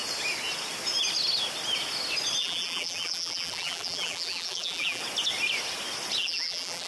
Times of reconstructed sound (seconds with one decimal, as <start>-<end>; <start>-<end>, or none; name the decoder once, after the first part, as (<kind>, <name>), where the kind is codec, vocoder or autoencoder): 2.4-5.0 (vocoder, BigVGAN v2); 6.2-6.9